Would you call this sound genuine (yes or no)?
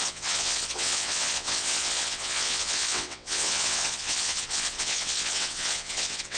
no